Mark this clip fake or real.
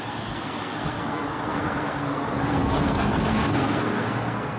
fake